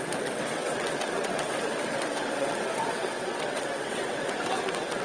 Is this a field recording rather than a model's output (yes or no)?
no